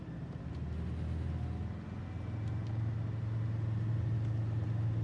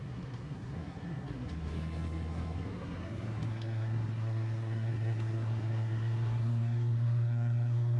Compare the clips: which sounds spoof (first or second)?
second